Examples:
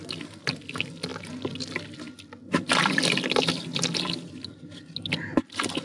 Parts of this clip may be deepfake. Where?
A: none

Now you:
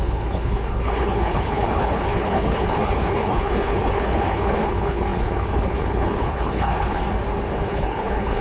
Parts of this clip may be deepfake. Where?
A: 0.0-7.0 (codec, HILCodec); 7.7-8.4